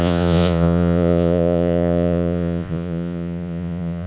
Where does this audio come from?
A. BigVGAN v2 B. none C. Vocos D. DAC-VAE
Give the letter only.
C